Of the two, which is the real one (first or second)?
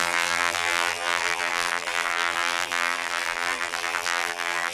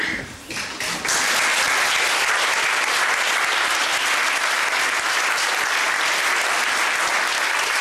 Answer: second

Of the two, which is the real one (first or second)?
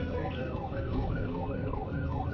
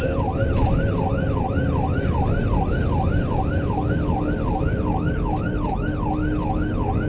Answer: second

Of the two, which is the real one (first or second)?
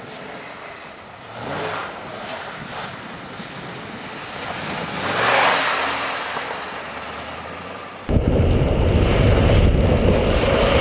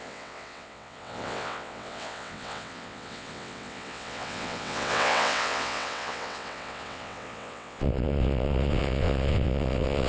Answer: first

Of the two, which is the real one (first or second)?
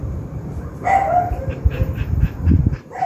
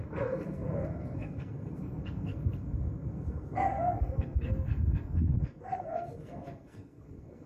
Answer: first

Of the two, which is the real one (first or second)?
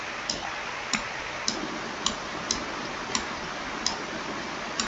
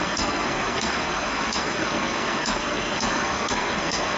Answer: first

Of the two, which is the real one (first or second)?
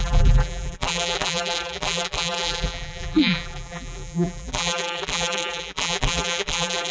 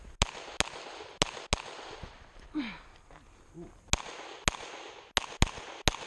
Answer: second